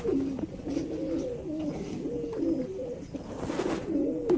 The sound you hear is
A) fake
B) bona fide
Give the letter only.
B